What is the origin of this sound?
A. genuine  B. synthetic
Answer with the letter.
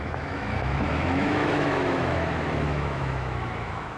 B